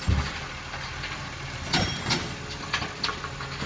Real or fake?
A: real